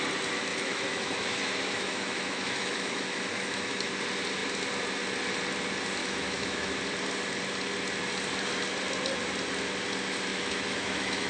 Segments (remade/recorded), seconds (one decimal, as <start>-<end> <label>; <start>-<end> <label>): 0.0-0.5 recorded; 0.5-3.9 remade; 3.9-6.0 recorded; 6.0-6.7 remade; 6.7-10.3 recorded; 10.3-11.3 remade